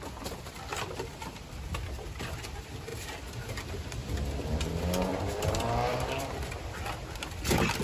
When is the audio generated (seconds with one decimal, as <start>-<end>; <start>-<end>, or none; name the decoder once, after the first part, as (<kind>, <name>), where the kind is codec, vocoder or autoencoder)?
0.7-2.2 (vocoder, BigVGAN v2); 5.1-6.5